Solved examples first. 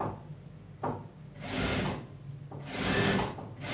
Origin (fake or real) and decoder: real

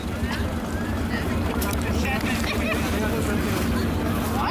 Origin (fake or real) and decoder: real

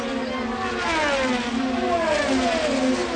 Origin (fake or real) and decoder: real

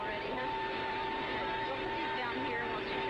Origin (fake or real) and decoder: real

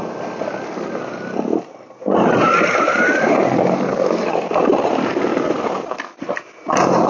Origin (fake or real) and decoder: real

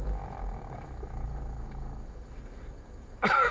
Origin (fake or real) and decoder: fake, autoencoder, DAC-VAE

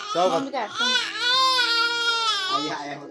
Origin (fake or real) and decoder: real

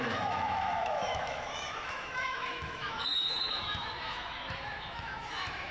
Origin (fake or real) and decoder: fake, autoencoder, DAC-VAE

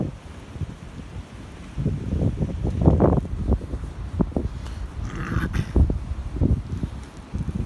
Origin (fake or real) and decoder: fake, vocoder, BigVGAN v2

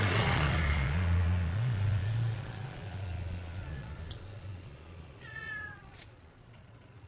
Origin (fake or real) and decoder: fake, vocoder, Vocos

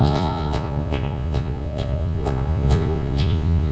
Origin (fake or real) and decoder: fake, vocoder, Vocos